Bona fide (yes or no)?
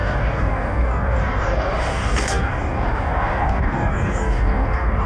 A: no